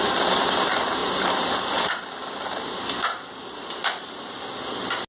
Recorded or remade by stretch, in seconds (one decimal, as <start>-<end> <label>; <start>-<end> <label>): 0.0-5.1 recorded